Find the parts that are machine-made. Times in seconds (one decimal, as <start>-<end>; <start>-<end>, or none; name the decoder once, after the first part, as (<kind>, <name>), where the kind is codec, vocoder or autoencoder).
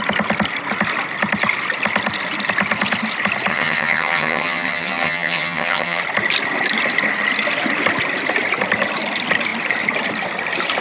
3.5-6.0 (vocoder, HiFi-GAN)